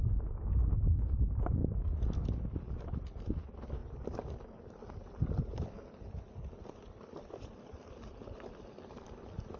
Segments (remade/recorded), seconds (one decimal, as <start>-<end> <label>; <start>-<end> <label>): 0.0-9.6 recorded